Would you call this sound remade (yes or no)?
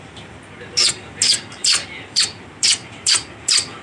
yes